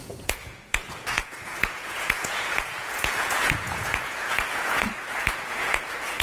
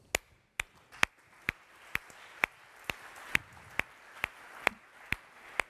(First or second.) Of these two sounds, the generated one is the first